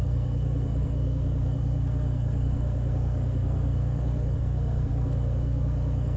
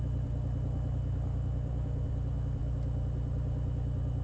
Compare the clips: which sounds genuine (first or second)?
second